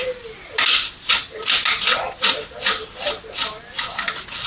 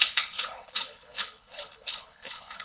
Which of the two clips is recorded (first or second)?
first